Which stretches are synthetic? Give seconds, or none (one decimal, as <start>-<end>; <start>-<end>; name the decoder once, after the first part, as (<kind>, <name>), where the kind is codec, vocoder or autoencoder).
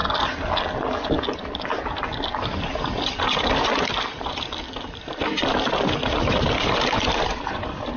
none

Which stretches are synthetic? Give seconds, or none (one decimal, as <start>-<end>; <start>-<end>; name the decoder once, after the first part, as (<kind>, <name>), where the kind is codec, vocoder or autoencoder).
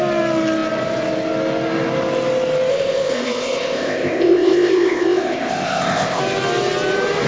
2.7-6.2 (codec, ZipCodec)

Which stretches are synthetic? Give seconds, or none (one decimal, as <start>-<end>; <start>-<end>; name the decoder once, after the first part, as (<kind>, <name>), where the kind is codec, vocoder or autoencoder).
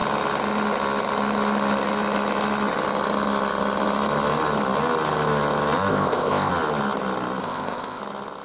5.9-6.5 (codec, ZipCodec); 7.4-8.0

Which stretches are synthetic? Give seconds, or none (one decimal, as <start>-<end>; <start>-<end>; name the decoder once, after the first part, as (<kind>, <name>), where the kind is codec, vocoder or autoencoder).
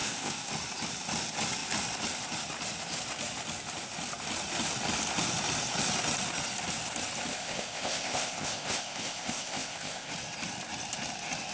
0.0-0.5 (codec, ZipCodec); 7.3-10.1